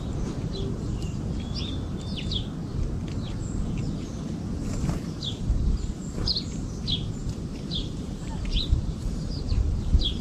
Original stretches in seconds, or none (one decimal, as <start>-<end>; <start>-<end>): 0.0-7.2; 9.7-10.2